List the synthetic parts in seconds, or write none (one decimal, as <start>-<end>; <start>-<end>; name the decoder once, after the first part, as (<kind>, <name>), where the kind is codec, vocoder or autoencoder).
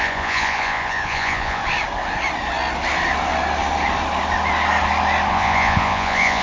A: 0.0-1.6 (vocoder, Vocos); 5.3-6.4